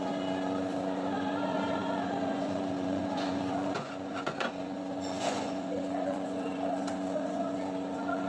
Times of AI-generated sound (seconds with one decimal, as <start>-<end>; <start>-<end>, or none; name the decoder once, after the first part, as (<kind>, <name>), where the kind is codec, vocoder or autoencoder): 0.0-8.3 (vocoder, Vocos)